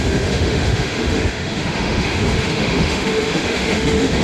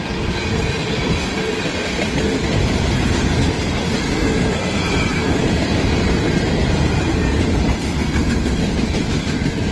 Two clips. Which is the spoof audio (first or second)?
first